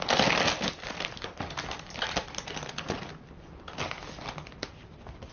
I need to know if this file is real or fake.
real